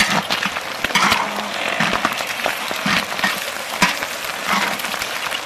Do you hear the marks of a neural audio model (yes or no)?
no